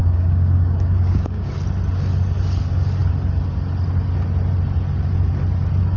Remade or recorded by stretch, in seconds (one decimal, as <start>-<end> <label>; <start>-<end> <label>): 0.0-1.5 remade; 1.5-6.0 recorded